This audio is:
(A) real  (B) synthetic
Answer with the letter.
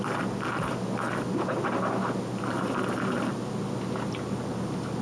A